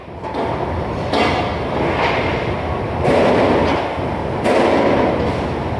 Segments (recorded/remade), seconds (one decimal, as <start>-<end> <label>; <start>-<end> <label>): 0.0-5.8 recorded